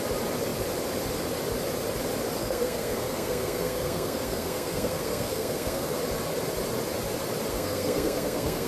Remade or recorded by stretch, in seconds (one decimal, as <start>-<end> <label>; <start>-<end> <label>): 0.0-2.4 recorded; 2.4-6.0 remade; 6.0-7.5 recorded; 7.5-8.7 remade